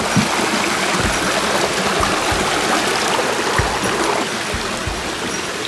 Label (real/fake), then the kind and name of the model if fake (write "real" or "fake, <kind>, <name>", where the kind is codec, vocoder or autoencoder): real